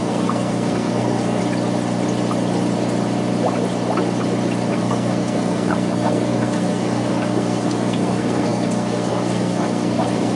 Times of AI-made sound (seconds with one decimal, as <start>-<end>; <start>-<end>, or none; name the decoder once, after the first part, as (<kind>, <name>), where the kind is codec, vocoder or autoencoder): 0.0-1.4 (codec, SNAC); 4.7-10.4